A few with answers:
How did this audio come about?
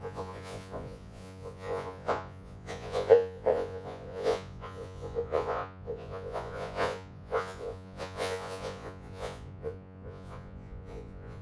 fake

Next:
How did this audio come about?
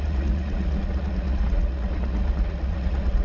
fake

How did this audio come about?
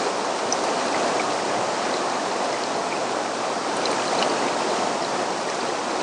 real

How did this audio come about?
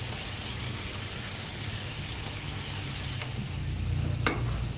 real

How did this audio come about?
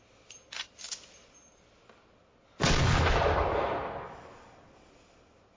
real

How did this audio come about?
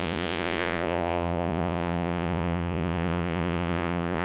fake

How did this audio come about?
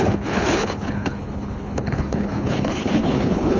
fake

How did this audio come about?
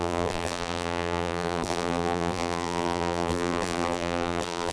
fake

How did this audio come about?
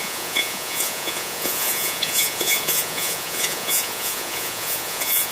fake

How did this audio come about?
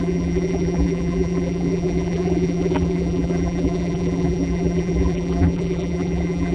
fake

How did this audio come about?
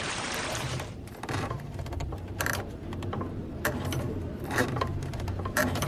fake